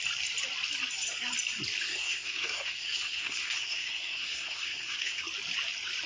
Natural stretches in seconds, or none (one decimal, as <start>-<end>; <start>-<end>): 0.0-1.9; 5.2-6.1